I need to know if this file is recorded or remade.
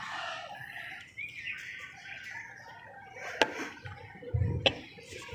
recorded